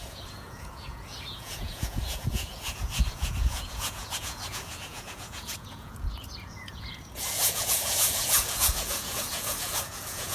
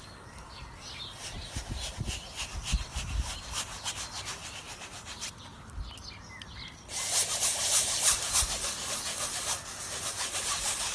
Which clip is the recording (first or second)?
second